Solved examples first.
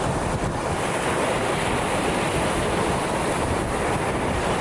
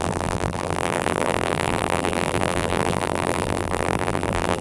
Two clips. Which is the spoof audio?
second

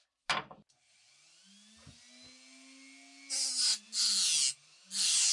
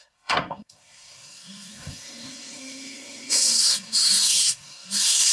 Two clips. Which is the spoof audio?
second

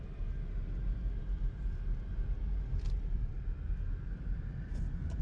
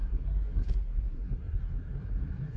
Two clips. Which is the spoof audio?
second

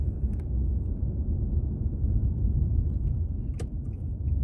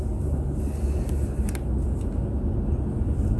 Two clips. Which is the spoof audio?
first